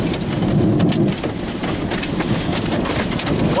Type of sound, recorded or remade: recorded